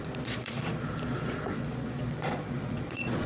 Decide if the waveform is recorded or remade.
remade